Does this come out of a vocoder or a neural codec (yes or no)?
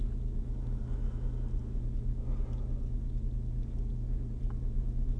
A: no